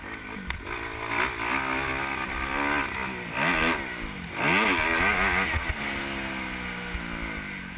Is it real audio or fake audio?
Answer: real